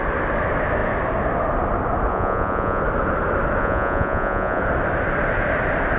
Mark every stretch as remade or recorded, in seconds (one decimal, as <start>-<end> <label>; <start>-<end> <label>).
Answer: 0.0-2.1 recorded; 2.1-2.8 remade; 2.8-3.6 recorded; 3.6-4.6 remade; 4.6-6.0 recorded